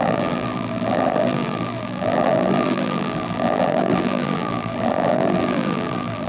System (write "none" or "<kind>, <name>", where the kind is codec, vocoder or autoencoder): vocoder, BigVGAN v2